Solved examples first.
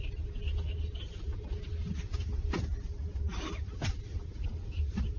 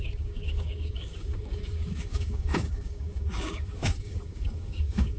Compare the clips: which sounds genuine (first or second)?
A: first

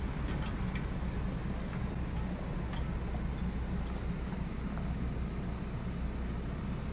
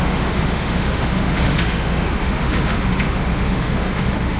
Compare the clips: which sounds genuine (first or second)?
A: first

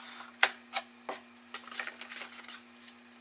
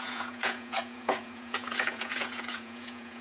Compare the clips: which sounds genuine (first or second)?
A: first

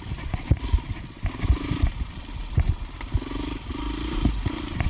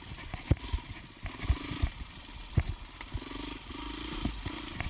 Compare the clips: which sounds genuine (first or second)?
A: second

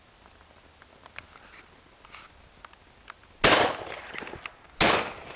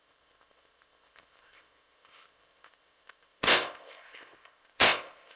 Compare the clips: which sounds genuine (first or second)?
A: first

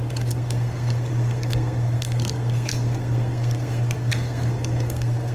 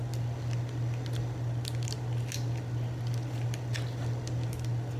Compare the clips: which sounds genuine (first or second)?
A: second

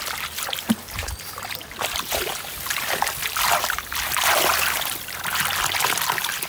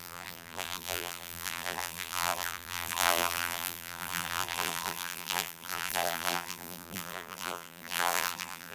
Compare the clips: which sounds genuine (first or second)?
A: first